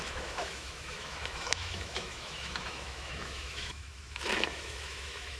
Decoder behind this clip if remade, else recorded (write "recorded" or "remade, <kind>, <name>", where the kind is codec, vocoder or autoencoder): remade, autoencoder, DAC-VAE